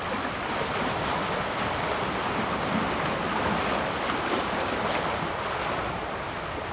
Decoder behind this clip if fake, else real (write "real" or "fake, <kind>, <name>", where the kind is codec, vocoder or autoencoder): real